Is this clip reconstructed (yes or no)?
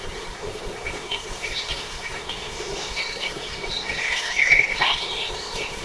yes